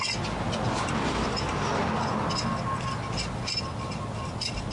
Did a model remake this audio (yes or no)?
no